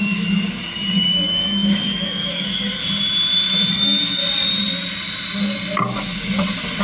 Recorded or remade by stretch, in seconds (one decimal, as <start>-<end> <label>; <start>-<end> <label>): 0.0-2.8 remade; 2.8-3.7 recorded; 3.7-4.2 remade; 4.2-6.8 recorded